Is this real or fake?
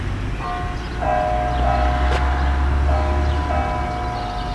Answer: real